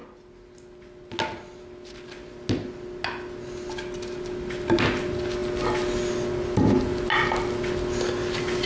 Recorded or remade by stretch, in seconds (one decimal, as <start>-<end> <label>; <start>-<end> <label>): 0.0-8.7 recorded